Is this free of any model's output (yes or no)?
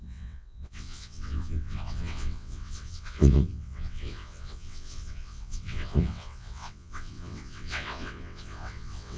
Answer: no